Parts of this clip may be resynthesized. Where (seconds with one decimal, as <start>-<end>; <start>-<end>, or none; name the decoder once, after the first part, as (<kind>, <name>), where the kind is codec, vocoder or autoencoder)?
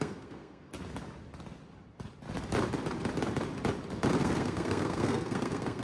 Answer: 0.0-0.7 (codec, SNAC); 4.2-5.8